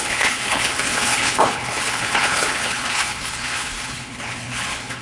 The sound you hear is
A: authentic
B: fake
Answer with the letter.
B